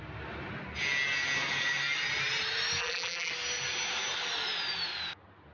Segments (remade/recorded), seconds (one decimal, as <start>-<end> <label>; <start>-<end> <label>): 0.0-2.8 recorded; 2.8-3.3 remade; 3.3-5.5 recorded